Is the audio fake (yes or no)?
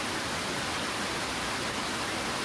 no